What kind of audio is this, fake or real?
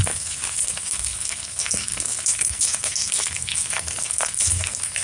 fake